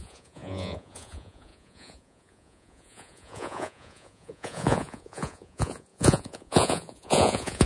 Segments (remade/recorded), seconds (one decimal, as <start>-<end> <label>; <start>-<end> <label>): 0.0-7.7 remade